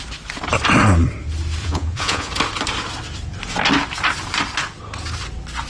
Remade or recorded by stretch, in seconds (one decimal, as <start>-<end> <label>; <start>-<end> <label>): 0.0-1.6 recorded; 1.6-2.3 remade; 2.3-5.7 recorded